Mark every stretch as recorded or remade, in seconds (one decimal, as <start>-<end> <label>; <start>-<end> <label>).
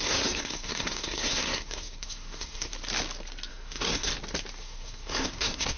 0.0-2.7 remade; 2.7-3.5 recorded; 3.5-4.1 remade; 4.1-4.6 recorded; 4.6-5.8 remade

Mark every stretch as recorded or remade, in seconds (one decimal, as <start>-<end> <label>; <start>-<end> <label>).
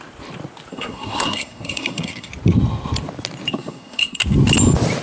0.0-0.7 recorded; 0.7-2.3 remade; 2.3-3.5 recorded; 3.5-4.2 remade; 4.2-5.0 recorded